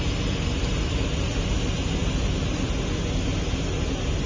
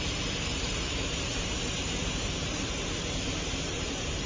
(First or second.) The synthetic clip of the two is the second